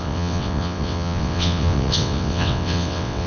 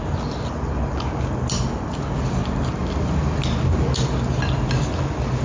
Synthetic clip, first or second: first